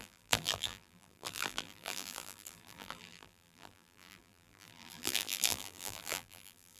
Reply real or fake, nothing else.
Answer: fake